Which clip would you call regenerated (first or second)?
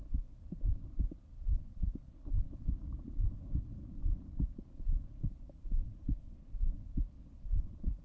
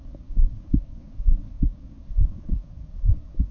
second